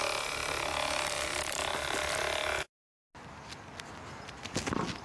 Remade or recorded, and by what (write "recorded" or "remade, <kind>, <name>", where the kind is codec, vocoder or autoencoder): recorded